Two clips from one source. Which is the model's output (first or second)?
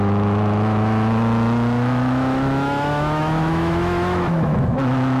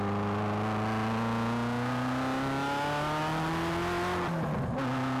first